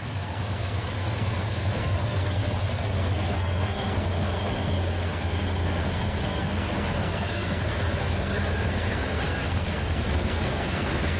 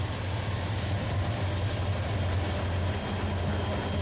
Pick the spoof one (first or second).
first